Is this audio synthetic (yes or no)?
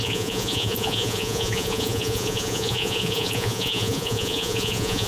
yes